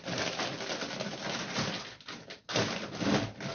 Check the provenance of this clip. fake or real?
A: real